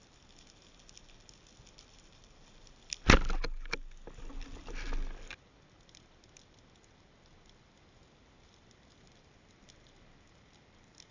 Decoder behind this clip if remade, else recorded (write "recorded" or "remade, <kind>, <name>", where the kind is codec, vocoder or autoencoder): recorded